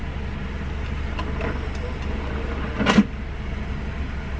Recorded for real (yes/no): yes